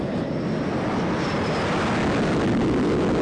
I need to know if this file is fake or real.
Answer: real